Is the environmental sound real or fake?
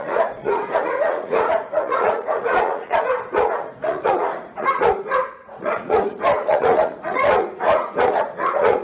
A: fake